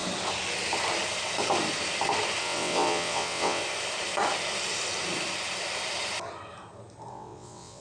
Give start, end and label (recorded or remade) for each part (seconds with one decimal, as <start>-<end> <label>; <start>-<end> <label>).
0.0-2.4 recorded; 2.4-3.6 remade; 3.6-7.1 recorded; 7.1-7.8 remade